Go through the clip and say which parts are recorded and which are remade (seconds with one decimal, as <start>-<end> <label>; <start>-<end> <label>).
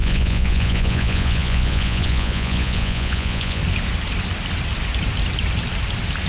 0.0-3.6 remade; 3.6-6.3 recorded